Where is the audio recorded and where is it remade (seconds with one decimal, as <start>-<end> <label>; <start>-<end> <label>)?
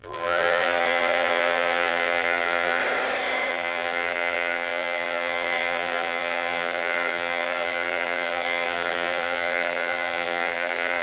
0.0-2.8 remade; 2.8-3.5 recorded; 3.5-11.0 remade